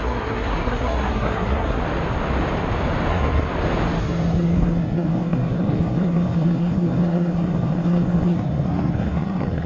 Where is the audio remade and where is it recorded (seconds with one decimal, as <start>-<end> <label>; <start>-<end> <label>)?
0.0-1.8 remade; 1.8-3.1 recorded; 3.1-3.5 remade; 3.5-4.0 recorded; 4.0-9.7 remade

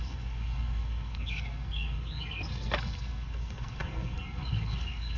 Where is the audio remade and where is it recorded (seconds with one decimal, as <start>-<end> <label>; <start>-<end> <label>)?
0.0-5.2 remade

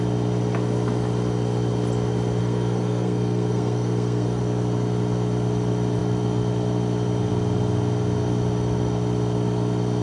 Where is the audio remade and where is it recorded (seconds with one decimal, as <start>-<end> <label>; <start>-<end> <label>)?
0.0-2.4 recorded; 2.4-4.4 remade; 4.4-10.0 recorded